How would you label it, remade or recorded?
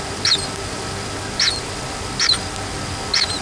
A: recorded